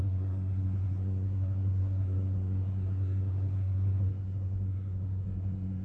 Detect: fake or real fake